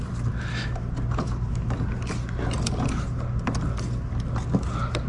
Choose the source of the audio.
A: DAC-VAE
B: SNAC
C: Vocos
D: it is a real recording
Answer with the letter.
D